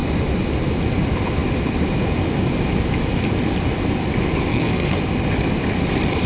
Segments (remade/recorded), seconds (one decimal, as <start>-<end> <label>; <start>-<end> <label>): 0.0-4.5 recorded; 4.5-5.0 remade; 5.0-6.3 recorded